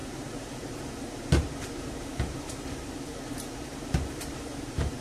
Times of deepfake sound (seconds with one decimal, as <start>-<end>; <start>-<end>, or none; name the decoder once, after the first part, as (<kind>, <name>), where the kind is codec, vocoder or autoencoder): 0.0-3.1 (vocoder, BigVGAN v2); 3.7-5.0